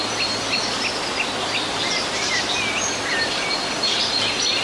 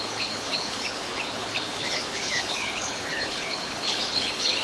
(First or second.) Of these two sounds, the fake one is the second